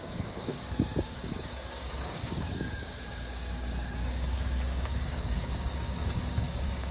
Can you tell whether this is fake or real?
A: fake